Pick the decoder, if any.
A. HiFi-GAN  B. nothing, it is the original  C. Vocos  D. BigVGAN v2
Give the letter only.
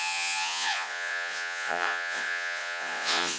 C